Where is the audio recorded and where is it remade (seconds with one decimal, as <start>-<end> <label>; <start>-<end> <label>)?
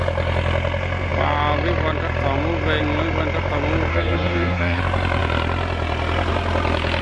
0.0-3.9 recorded; 3.9-4.8 remade; 4.8-7.0 recorded